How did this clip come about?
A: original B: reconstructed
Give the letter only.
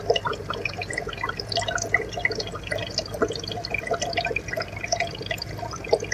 A